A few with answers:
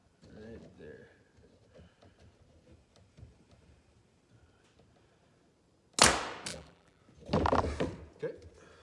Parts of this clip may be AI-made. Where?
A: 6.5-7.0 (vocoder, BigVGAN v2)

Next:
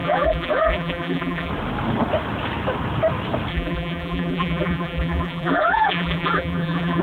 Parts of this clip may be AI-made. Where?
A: 0.0-1.5 (vocoder, BigVGAN v2); 3.5-7.0

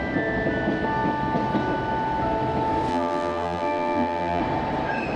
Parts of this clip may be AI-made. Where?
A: 2.9-4.4 (vocoder, BigVGAN v2)

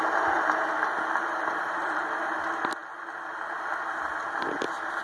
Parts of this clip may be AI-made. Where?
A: none